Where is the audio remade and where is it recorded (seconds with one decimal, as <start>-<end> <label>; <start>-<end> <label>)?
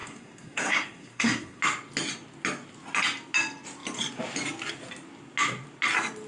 0.0-1.6 remade; 1.6-6.3 recorded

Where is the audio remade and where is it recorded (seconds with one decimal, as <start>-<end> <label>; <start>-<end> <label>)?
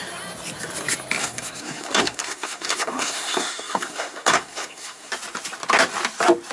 0.0-1.2 recorded; 1.2-5.1 remade; 5.1-6.5 recorded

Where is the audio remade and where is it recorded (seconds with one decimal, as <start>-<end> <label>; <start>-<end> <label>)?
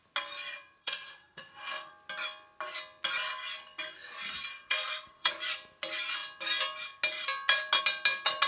0.0-0.8 recorded; 0.8-1.9 remade; 1.9-4.5 recorded; 4.5-5.3 remade; 5.3-8.5 recorded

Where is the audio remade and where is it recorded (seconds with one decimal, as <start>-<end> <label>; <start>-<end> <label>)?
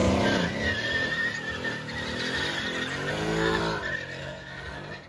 0.0-3.1 recorded; 3.1-3.6 remade; 3.6-4.2 recorded; 4.2-5.1 remade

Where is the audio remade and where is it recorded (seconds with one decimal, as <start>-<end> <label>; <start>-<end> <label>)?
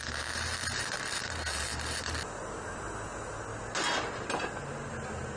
0.0-5.4 recorded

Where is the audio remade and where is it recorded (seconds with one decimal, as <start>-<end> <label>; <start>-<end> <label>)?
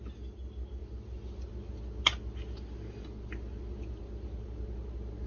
0.0-5.3 recorded